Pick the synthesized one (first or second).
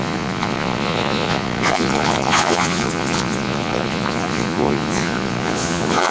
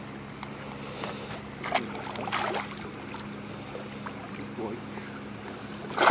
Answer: first